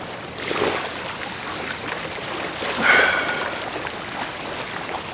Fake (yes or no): no